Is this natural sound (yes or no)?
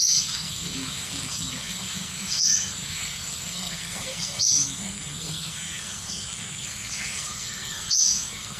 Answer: no